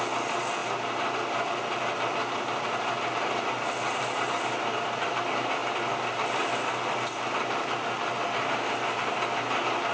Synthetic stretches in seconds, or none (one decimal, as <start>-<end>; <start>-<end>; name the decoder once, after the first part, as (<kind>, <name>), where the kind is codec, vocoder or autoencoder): none